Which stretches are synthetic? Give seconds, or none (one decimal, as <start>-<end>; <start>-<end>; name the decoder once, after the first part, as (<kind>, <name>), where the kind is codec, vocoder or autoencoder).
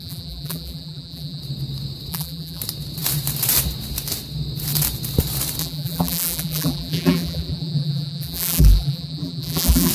0.0-1.4 (vocoder, BigVGAN v2); 2.1-2.6; 5.6-9.9